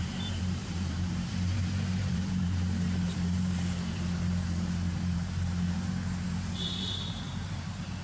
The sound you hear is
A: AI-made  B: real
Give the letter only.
A